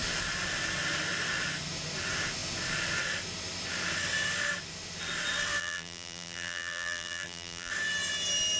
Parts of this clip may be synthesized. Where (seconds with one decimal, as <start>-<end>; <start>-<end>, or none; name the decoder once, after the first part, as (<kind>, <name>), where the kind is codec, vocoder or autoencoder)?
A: 5.6-7.7 (vocoder, BigVGAN v2)